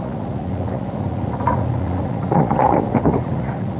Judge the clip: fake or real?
fake